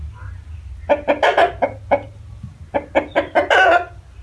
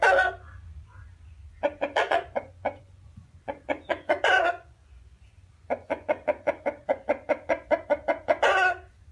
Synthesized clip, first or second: second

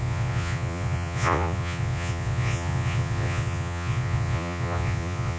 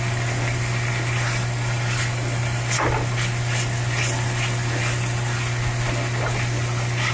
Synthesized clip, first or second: first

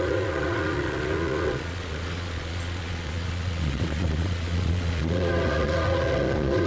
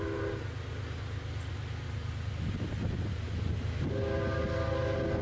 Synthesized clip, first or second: first